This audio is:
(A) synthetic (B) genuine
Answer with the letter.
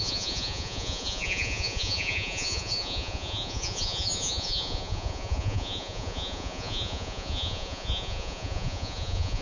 A